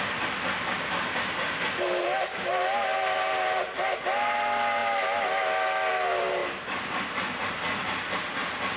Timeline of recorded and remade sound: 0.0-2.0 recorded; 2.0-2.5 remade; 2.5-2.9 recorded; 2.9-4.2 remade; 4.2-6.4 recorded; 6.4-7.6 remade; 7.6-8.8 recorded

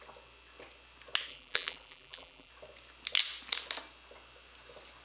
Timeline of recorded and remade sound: 0.0-1.3 recorded; 1.3-2.5 remade; 2.5-5.0 recorded

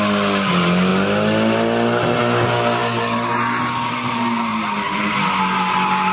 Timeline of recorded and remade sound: 0.0-4.5 recorded; 4.5-5.1 remade; 5.1-6.1 recorded

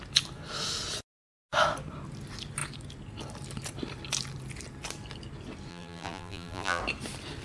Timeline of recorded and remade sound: 0.0-5.7 recorded; 5.7-6.8 remade; 6.8-7.4 recorded